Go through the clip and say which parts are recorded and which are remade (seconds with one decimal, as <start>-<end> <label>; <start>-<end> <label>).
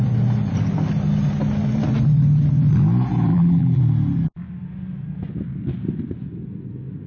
0.0-3.3 recorded; 3.3-3.8 remade; 3.8-7.1 recorded